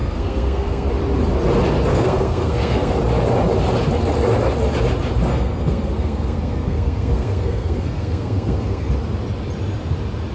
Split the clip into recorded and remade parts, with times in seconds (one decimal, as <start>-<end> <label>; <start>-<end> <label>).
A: 0.0-0.9 remade; 0.9-1.9 recorded; 1.9-2.9 remade; 2.9-5.3 recorded; 5.3-8.9 remade; 8.9-10.3 recorded